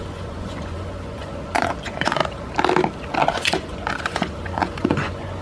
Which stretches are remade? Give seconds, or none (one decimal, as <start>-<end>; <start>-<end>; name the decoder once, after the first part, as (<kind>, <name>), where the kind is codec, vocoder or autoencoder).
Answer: 0.0-2.2 (vocoder, Vocos); 3.2-5.4